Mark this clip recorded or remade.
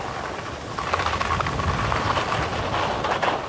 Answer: recorded